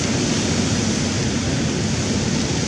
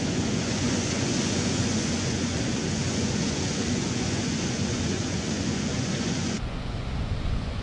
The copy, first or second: second